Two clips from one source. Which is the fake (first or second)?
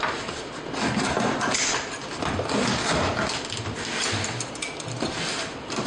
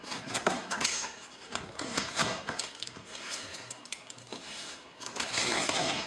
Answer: second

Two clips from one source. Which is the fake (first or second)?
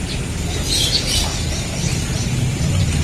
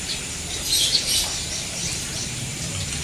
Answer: second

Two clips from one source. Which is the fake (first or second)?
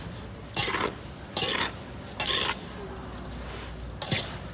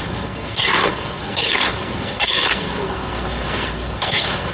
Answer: second